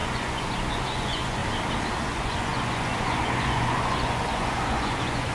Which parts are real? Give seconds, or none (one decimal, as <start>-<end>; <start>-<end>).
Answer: 1.4-2.0